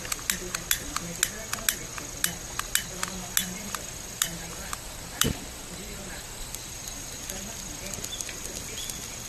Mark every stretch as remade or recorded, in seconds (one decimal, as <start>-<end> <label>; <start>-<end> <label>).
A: 0.0-3.4 recorded; 3.4-7.2 remade; 7.2-9.3 recorded